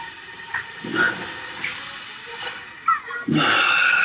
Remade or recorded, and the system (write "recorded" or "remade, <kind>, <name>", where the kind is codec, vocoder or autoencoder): recorded